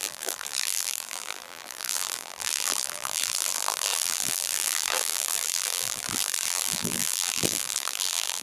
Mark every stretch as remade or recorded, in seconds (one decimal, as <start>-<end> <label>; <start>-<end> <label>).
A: 0.0-8.4 remade